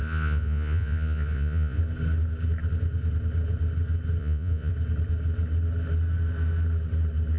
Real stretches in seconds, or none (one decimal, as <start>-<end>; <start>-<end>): 1.8-4.2; 4.7-7.4